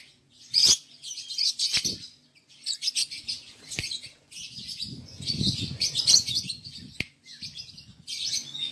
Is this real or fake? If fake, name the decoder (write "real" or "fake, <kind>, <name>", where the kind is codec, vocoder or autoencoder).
fake, vocoder, Vocos